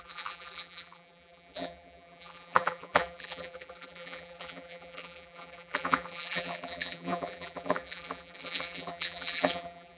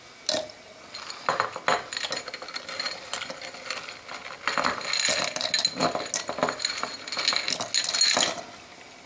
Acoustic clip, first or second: second